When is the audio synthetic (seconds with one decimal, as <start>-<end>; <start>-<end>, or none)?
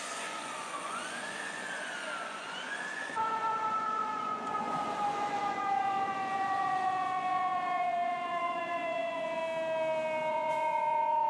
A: 0.0-9.4; 10.3-11.3